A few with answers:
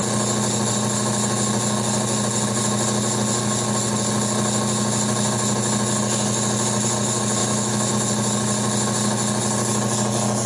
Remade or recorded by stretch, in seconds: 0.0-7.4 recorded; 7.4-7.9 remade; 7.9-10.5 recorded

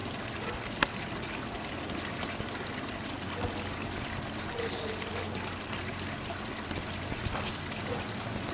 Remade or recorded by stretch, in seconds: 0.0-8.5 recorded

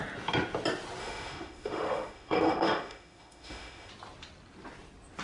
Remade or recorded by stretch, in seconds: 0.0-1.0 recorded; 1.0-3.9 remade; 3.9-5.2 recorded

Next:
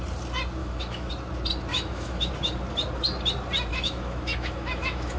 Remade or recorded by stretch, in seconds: 0.0-0.6 recorded; 0.6-1.1 remade; 1.1-1.7 recorded; 1.7-2.3 remade; 2.3-3.7 recorded; 3.7-5.2 remade